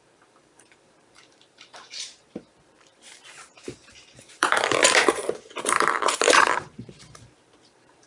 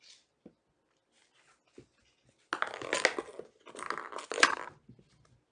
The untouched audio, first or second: second